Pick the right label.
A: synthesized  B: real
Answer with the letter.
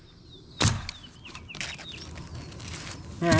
B